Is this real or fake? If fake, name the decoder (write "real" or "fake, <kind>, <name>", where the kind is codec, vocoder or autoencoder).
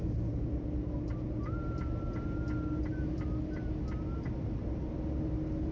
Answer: real